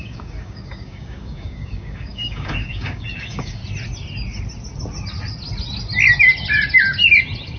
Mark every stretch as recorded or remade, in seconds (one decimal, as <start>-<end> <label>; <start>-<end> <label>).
0.0-3.6 remade; 3.6-7.6 recorded

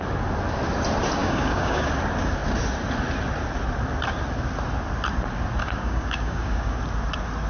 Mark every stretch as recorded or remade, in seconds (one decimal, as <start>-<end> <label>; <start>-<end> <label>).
0.0-1.2 recorded; 1.2-1.9 remade; 1.9-5.6 recorded; 5.6-6.8 remade; 6.8-7.5 recorded